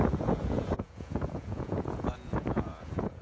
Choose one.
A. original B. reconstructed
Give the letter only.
B